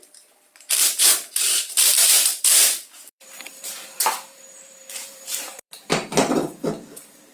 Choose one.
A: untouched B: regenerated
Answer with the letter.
B